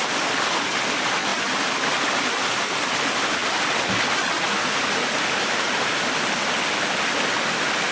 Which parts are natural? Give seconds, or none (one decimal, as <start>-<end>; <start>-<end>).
0.0-7.9